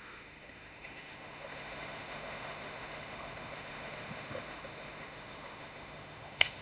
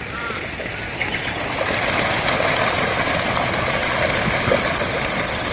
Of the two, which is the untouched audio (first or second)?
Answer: second